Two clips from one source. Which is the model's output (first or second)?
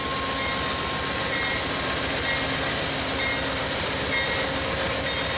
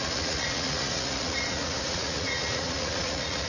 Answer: second